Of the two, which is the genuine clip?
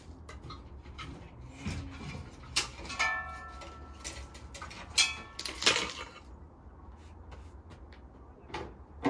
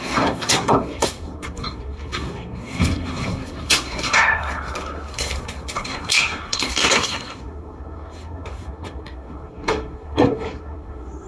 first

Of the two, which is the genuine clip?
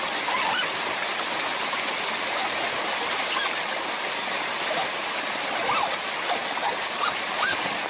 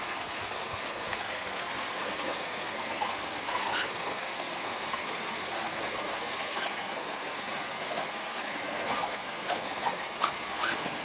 first